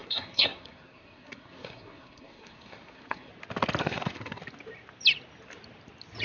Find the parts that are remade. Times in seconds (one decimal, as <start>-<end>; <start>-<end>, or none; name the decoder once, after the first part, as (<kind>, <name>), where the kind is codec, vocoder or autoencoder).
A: 0.0-3.3 (codec, SNAC); 3.8-4.4